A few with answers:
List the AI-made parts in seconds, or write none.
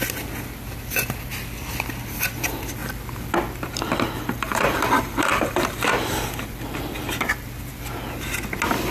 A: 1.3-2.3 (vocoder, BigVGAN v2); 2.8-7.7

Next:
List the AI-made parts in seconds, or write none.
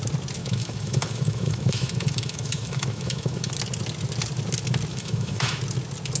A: 0.4-3.5 (autoencoder, DAC-VAE); 4.9-5.6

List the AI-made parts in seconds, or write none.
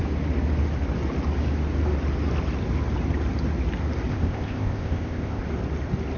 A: 4.1-5.4 (codec, ZipCodec)